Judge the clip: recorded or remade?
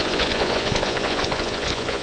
remade